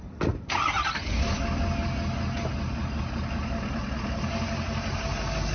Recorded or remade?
recorded